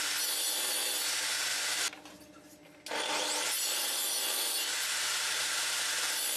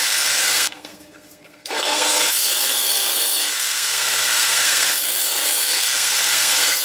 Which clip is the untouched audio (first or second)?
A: first